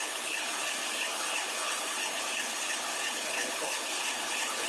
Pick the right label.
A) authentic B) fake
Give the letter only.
B